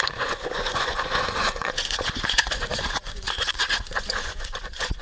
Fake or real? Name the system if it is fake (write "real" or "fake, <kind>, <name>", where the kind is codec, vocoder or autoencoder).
fake, vocoder, Vocos